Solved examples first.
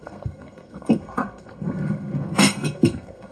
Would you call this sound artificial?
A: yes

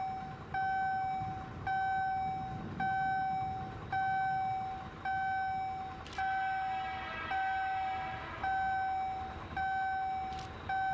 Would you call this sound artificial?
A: no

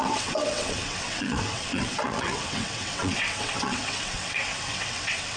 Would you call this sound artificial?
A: yes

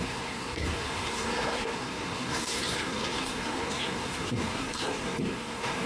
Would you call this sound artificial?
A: yes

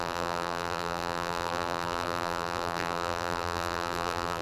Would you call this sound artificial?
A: yes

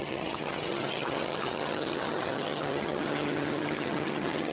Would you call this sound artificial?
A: yes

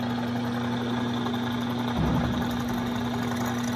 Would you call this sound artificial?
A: no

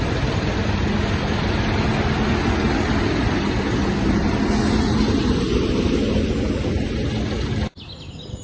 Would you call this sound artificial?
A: no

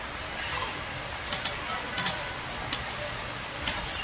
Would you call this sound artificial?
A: no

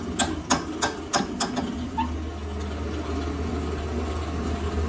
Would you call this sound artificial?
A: no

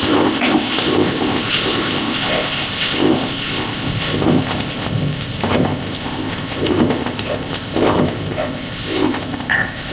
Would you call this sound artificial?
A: yes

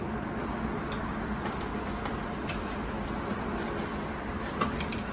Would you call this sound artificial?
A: no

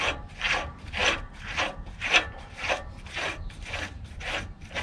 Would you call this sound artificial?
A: yes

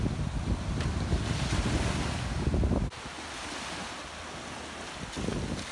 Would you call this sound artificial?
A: no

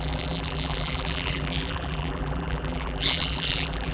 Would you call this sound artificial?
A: yes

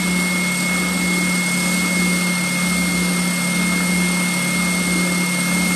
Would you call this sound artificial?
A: no